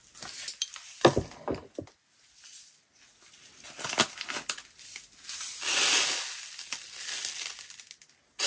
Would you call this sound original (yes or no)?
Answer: yes